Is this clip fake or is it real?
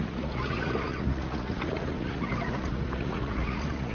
fake